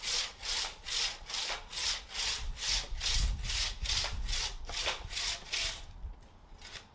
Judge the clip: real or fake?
real